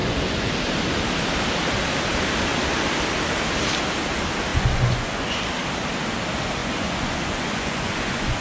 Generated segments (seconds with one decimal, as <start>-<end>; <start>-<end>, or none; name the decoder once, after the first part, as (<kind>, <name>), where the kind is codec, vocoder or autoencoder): 0.0-0.5 (vocoder, Vocos); 4.5-5.4; 6.6-8.4